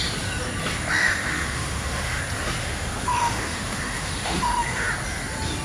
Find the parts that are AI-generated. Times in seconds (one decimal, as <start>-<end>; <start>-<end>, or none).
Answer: 1.0-2.2; 2.6-4.9